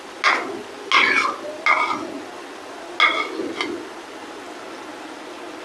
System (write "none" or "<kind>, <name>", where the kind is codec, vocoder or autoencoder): none